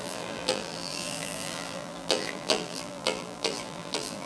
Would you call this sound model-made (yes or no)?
yes